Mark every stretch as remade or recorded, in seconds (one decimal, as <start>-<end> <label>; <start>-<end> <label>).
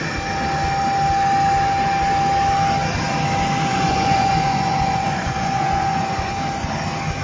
0.0-3.7 recorded; 3.7-6.3 remade; 6.3-7.2 recorded